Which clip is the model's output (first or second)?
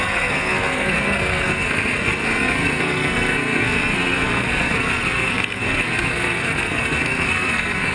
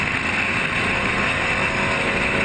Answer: first